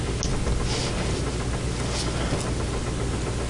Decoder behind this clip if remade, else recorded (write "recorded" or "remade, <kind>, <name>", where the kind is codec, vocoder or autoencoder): recorded